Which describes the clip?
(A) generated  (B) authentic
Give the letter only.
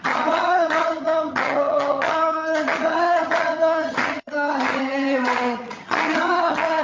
A